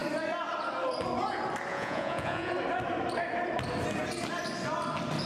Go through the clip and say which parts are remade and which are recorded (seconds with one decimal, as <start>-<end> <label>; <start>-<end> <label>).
0.0-1.7 recorded; 1.7-2.5 remade; 2.5-5.3 recorded